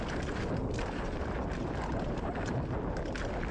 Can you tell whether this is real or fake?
real